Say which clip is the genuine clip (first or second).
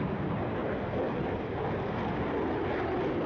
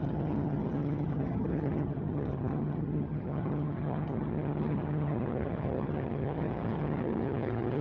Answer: first